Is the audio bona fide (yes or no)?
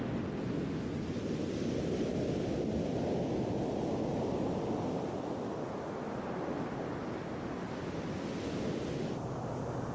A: yes